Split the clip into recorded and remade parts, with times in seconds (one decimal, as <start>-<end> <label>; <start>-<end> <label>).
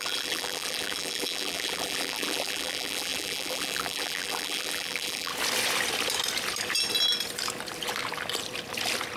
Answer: 0.0-5.3 remade; 5.3-9.2 recorded